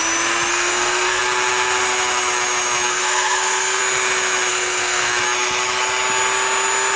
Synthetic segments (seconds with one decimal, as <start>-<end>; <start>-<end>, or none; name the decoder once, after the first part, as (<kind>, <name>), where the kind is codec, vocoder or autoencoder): 0.5-1.2 (codec, SNAC); 2.9-3.8; 4.5-5.1